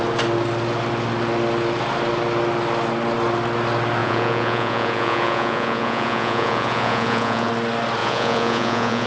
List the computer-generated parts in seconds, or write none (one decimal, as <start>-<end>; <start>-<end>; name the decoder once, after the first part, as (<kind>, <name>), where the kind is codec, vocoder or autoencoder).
4.0-7.5 (vocoder, Vocos); 8.0-9.1